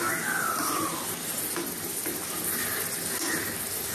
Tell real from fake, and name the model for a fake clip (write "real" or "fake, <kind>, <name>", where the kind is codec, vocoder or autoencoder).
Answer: real